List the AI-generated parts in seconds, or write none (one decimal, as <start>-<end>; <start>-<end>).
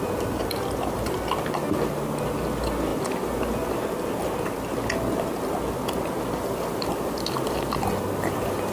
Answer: none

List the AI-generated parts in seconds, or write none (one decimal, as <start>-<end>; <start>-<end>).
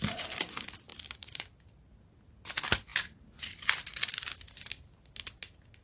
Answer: 0.9-1.9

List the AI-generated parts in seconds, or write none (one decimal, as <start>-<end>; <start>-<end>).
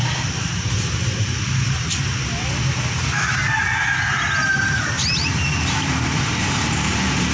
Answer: 0.0-2.0; 2.8-3.4; 4.4-7.3